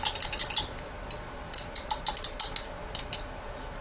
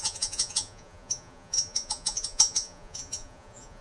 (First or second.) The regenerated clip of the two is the second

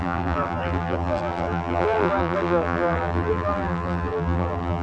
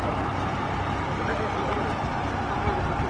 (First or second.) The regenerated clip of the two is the first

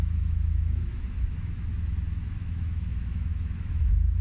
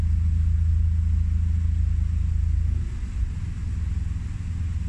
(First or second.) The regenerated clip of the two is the first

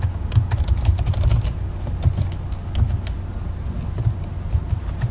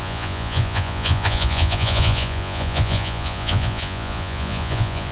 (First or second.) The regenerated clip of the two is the second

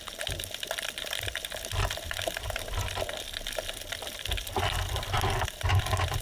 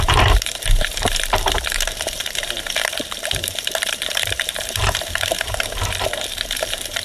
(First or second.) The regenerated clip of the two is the second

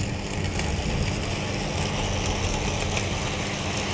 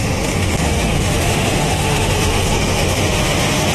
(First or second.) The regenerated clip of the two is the second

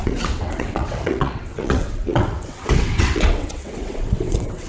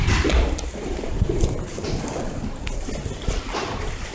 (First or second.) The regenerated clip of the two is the first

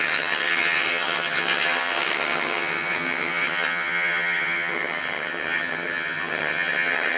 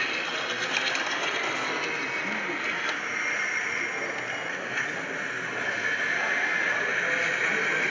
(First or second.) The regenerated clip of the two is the first